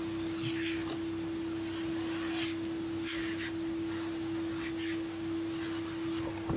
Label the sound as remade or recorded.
recorded